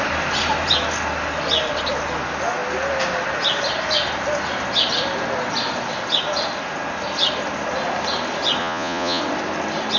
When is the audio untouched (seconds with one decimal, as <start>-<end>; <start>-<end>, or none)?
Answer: 0.0-8.6; 9.2-10.0